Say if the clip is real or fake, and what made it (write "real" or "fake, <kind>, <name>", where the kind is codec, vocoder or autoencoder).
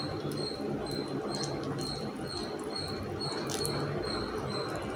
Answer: real